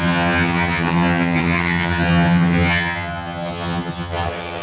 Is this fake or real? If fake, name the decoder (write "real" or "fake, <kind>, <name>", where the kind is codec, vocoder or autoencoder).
fake, vocoder, HiFi-GAN